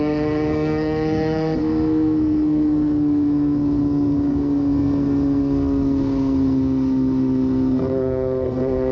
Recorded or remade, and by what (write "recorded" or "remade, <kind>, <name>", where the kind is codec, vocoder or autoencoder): remade, codec, SNAC